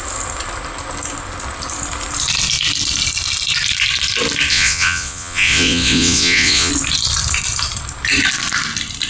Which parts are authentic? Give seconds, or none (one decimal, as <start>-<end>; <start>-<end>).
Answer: 0.0-4.5; 6.7-9.1